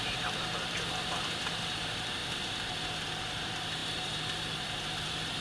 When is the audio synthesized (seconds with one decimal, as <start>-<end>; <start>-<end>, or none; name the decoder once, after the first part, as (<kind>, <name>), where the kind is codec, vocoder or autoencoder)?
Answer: 0.0-2.2 (vocoder, BigVGAN v2); 3.2-5.4